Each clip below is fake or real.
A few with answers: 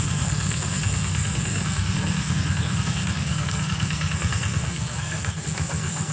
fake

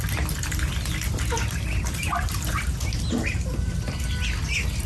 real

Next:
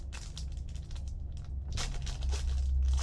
real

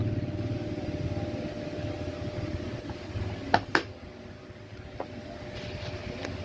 real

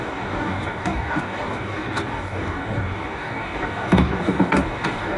fake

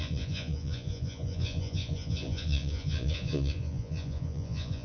fake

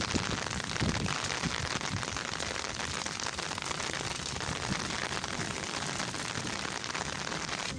real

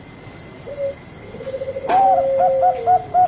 real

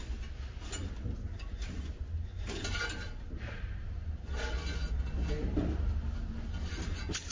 real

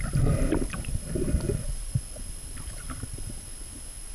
real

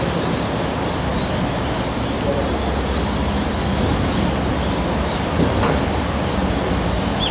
real